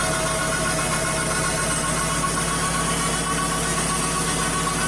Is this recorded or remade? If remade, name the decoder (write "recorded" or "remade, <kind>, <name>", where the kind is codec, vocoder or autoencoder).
recorded